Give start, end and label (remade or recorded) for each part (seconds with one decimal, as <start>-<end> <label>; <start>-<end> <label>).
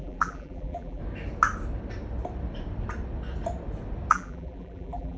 0.0-1.0 remade; 1.0-4.1 recorded; 4.1-5.2 remade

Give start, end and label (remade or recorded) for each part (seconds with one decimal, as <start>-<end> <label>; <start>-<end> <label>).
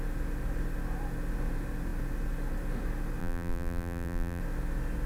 0.0-3.2 recorded; 3.2-4.4 remade; 4.4-5.1 recorded